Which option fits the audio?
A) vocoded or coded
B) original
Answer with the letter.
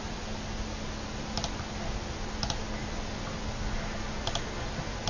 B